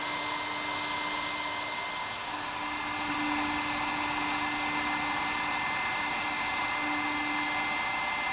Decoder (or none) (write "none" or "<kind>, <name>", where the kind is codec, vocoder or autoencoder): none